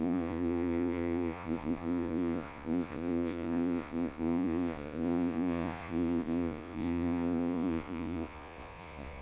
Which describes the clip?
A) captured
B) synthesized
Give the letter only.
B